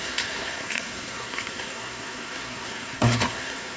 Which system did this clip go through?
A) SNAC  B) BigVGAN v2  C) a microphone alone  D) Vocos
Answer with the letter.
A